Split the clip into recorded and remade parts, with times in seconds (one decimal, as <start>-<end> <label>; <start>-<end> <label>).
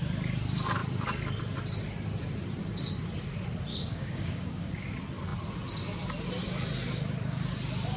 0.0-3.7 recorded; 3.7-4.7 remade; 4.7-8.0 recorded